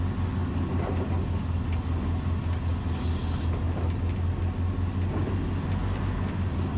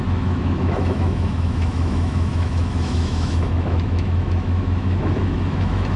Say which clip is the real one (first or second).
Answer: first